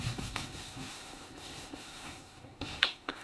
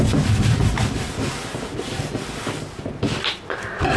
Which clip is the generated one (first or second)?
first